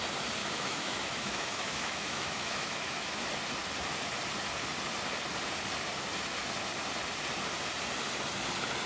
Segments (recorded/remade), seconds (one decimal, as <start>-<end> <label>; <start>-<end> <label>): 0.0-0.4 recorded; 0.4-3.2 remade; 3.2-8.9 recorded